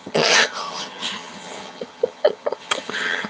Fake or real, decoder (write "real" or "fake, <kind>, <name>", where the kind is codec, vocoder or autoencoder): fake, vocoder, HiFi-GAN